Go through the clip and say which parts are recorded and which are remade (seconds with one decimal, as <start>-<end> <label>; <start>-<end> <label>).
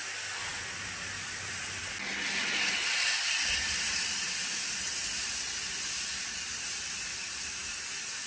0.0-0.5 remade; 0.5-5.5 recorded; 5.5-6.1 remade; 6.1-6.7 recorded; 6.7-7.6 remade; 7.6-8.3 recorded